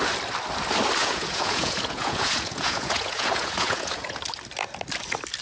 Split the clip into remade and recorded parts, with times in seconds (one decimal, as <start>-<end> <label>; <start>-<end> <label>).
0.0-1.0 recorded; 1.0-4.2 remade; 4.2-5.4 recorded